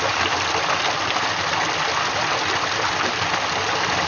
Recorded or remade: recorded